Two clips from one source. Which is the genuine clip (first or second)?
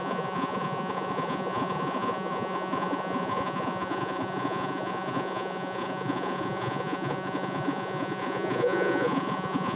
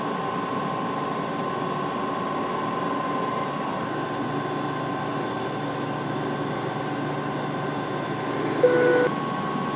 second